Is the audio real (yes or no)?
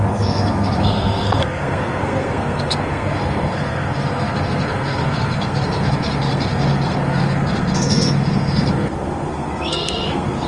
no